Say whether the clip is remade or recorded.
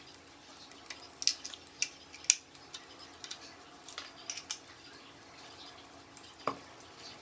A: recorded